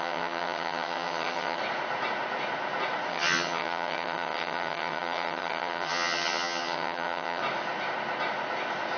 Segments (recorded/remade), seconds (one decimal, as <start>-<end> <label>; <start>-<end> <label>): 0.0-1.6 remade; 1.6-3.1 recorded; 3.1-7.4 remade; 7.4-9.0 recorded